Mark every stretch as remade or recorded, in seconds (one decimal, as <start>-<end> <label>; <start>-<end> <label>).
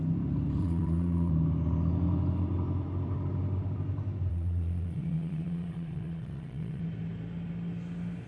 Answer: 0.0-0.6 recorded; 0.6-1.3 remade; 1.3-4.3 recorded; 4.3-6.8 remade; 6.8-8.3 recorded